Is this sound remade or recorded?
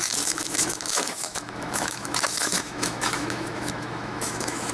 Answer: remade